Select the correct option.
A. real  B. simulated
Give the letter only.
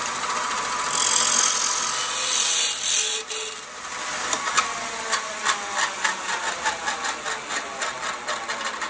A